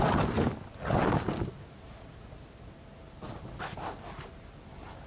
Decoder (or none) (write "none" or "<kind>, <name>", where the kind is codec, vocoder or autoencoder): none